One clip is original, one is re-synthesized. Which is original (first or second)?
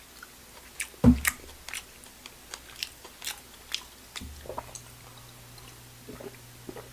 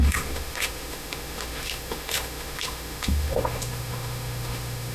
first